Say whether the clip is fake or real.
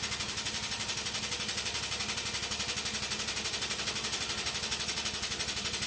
real